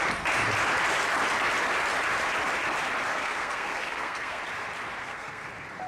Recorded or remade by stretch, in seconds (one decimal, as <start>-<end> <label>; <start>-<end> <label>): 0.0-3.1 recorded; 3.1-4.4 remade; 4.4-5.0 recorded; 5.0-5.5 remade; 5.5-5.9 recorded